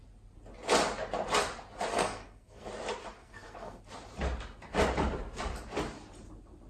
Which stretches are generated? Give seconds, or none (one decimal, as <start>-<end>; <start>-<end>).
1.9-2.7; 3.2-3.8